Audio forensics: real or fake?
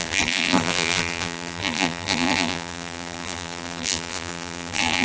fake